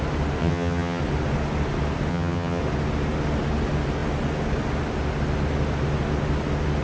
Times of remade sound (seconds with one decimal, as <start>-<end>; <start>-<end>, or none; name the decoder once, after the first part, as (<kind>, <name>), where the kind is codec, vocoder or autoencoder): 0.4-1.0 (vocoder, HiFi-GAN); 2.1-2.6